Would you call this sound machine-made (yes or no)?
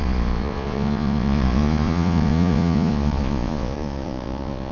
yes